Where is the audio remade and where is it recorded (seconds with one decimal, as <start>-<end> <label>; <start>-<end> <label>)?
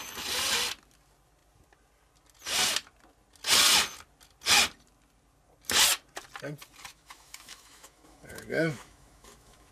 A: 0.0-6.9 recorded; 6.9-9.7 remade